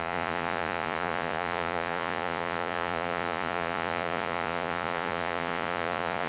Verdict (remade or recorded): remade